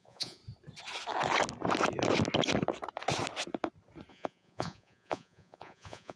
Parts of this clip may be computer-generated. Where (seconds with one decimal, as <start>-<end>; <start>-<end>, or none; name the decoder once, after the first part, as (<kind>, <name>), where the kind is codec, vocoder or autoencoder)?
0.0-0.4 (vocoder, Vocos); 4.1-6.2